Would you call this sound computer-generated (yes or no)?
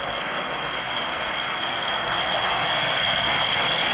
yes